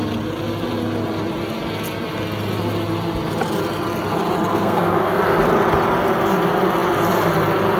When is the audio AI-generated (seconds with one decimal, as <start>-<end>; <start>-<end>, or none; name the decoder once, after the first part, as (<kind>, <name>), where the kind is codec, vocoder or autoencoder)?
4.5-5.2 (codec, SNAC)